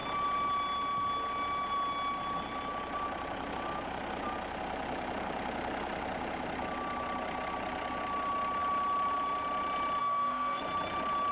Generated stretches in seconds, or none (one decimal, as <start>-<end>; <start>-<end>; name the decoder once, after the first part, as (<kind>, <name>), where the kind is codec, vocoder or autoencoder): 10.0-10.6 (autoencoder, DAC-VAE)